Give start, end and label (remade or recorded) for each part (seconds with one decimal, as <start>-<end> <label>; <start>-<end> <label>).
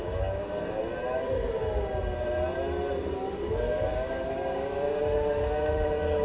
0.0-0.8 remade; 0.8-3.9 recorded; 3.9-5.0 remade; 5.0-6.2 recorded